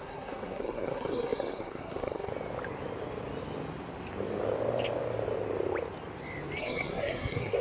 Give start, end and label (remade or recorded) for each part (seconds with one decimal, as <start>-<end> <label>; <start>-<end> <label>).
0.0-2.3 remade; 2.3-6.6 recorded; 6.6-7.6 remade